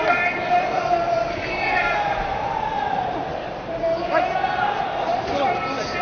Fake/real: real